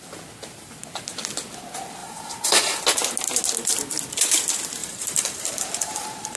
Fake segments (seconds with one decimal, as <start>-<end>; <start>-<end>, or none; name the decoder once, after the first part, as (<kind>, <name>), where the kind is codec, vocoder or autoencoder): 2.0-2.8 (vocoder, BigVGAN v2); 4.8-6.4